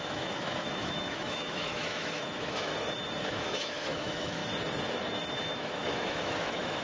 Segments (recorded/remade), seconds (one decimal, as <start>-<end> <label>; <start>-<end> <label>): 0.0-2.7 remade; 2.7-3.2 recorded; 3.2-4.4 remade; 4.4-5.3 recorded; 5.3-6.8 remade